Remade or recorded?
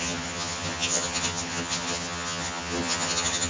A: remade